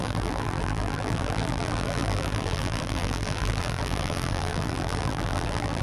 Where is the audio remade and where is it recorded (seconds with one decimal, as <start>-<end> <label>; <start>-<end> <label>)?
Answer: 0.0-5.8 remade

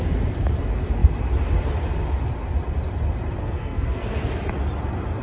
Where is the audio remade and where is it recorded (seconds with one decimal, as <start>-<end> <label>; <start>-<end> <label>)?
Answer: 0.0-3.4 recorded; 3.4-4.2 remade; 4.2-5.2 recorded

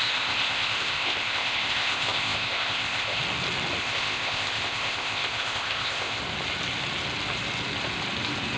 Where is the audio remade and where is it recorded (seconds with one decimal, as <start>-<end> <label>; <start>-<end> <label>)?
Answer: 0.0-3.2 remade; 3.2-3.8 recorded; 3.8-6.2 remade; 6.2-8.6 recorded

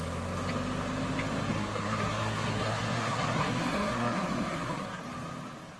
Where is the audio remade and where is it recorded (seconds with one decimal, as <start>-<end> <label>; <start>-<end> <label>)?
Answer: 0.0-1.5 recorded; 1.5-5.0 remade; 5.0-5.8 recorded

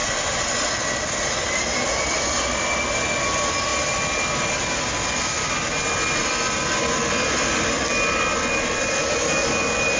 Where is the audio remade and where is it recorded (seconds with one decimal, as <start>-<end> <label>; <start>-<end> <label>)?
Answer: 0.0-10.0 recorded

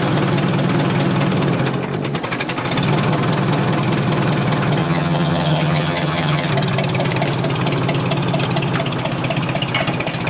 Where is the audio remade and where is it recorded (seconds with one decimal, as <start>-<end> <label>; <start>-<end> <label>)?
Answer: 0.0-4.8 recorded; 4.8-6.5 remade; 6.5-10.3 recorded

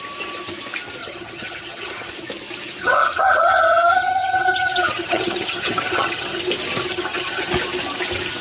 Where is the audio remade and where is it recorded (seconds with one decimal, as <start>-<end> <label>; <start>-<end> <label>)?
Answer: 0.0-1.0 recorded; 1.0-2.1 remade; 2.1-2.8 recorded; 2.8-6.4 remade; 6.4-6.9 recorded; 6.9-7.5 remade; 7.5-8.4 recorded